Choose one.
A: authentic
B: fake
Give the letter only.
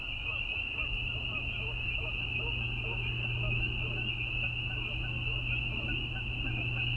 A